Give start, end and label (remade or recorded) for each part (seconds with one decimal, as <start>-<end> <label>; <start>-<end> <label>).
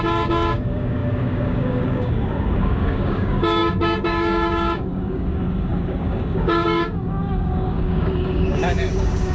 0.0-9.3 remade